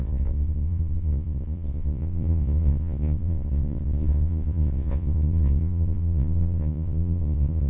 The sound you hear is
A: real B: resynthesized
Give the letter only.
B